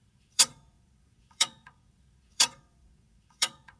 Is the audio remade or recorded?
remade